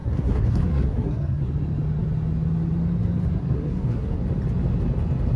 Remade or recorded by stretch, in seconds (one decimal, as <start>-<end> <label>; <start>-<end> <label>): 0.0-1.5 remade; 1.5-3.4 recorded; 3.4-4.2 remade; 4.2-5.4 recorded